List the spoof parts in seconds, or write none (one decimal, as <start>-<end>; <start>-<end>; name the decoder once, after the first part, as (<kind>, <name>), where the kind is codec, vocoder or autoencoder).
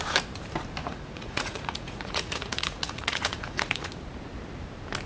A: 0.8-3.9 (vocoder, Vocos)